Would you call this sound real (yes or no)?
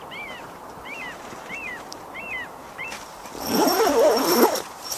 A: no